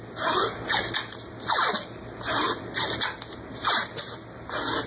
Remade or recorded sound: recorded